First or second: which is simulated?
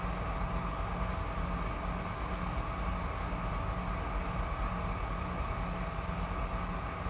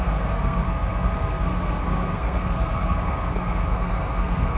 second